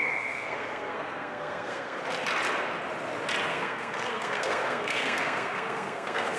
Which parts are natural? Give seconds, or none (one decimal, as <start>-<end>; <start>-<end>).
2.0-3.5